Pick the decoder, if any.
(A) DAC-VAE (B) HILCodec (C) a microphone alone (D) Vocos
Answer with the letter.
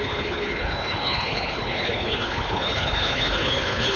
B